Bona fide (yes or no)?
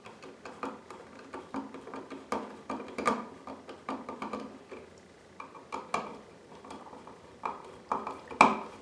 yes